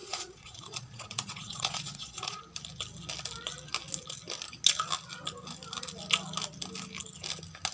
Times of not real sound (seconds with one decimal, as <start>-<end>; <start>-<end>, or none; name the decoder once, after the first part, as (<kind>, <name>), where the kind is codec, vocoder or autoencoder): 0.0-2.4 (vocoder, Vocos)